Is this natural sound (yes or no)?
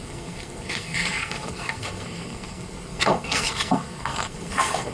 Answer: no